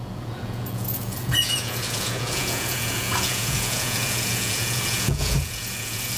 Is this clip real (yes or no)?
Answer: no